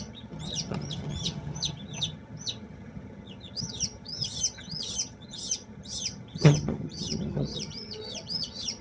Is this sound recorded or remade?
remade